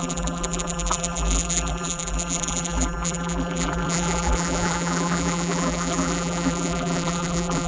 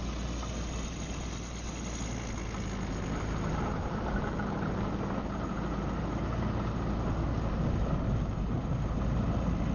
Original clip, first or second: second